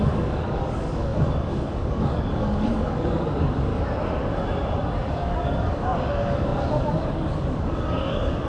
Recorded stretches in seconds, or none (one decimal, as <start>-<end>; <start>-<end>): 3.7-5.1